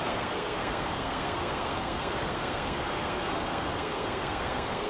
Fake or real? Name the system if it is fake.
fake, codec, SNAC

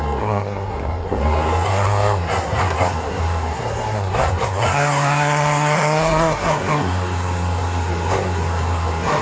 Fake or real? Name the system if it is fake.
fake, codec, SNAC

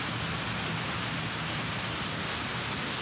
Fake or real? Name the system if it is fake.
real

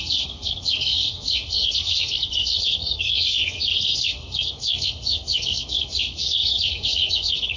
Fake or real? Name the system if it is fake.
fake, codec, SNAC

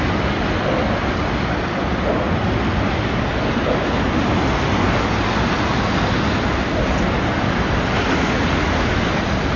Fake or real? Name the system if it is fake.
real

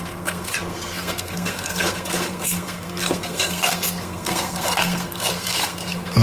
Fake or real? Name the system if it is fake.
fake, codec, SNAC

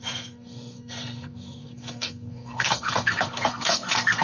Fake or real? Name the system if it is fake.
fake, codec, SNAC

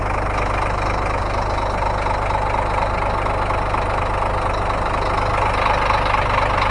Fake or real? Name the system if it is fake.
real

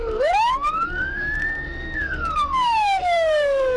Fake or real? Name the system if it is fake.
fake, codec, SNAC